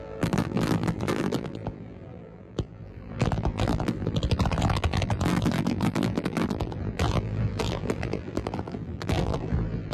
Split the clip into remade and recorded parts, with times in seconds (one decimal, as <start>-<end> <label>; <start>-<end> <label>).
0.0-9.9 remade